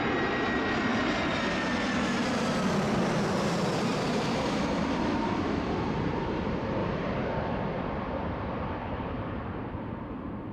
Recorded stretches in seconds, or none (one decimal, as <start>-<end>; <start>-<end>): 0.0-6.8; 7.3-8.8; 9.7-10.5

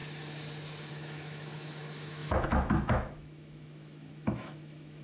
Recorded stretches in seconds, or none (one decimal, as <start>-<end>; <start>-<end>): 0.0-0.9

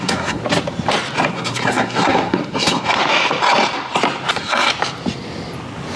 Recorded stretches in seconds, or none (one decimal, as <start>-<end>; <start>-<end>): 0.4-1.3; 3.0-4.3; 4.7-6.0

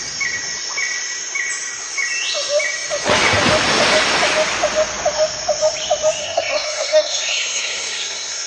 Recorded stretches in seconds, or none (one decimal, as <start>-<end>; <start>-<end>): 0.0-6.2

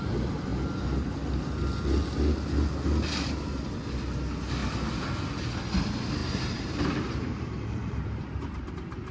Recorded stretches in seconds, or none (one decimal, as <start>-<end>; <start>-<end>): 0.0-6.2; 8.7-9.1

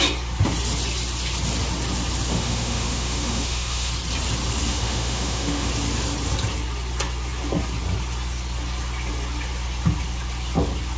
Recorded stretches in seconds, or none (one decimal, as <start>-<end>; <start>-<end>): 0.0-2.3; 3.9-4.7; 5.7-11.0